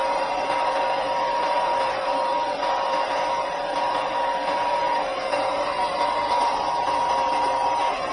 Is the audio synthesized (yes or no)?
yes